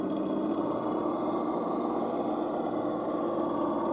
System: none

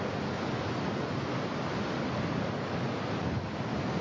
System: none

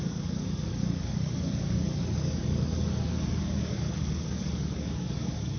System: codec, DAC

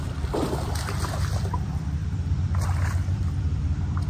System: vocoder, BigVGAN v2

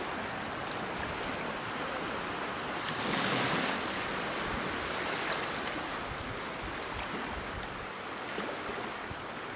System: none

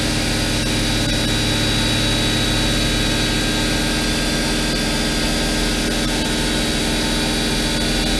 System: none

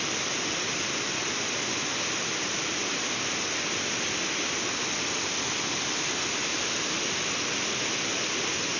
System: none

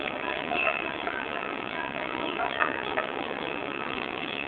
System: vocoder, WaveNeXt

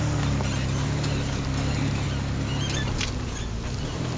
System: none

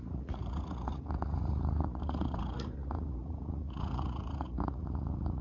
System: vocoder, Vocos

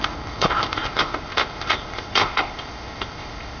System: codec, ZipCodec